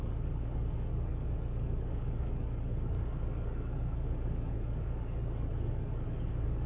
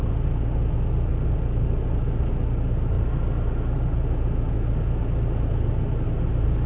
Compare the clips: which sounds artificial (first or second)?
first